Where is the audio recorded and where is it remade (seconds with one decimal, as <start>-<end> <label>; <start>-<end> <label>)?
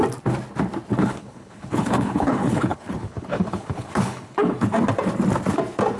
0.0-1.0 recorded; 1.0-4.6 remade; 4.6-6.0 recorded